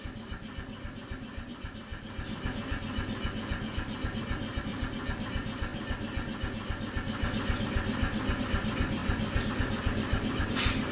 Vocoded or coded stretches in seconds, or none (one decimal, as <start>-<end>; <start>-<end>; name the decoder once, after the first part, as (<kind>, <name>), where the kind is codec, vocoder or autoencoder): 0.0-1.9 (vocoder, BigVGAN v2); 4.6-5.7; 8.4-10.9